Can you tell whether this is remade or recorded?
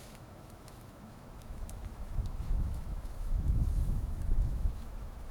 remade